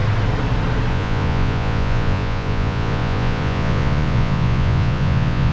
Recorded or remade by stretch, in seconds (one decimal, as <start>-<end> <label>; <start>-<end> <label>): 0.0-0.9 recorded; 0.9-5.5 remade